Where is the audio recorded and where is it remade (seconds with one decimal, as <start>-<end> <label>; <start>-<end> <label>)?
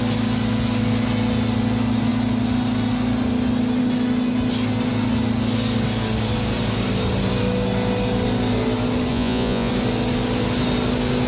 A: 0.0-9.1 recorded; 9.1-9.7 remade; 9.7-11.3 recorded